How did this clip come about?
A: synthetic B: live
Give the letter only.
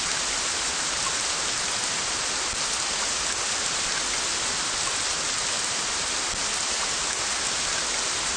B